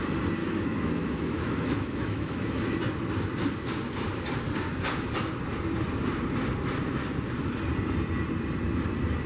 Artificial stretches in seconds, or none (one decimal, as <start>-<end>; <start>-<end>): 0.4-2.8